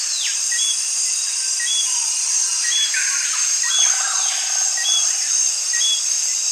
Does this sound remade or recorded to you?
recorded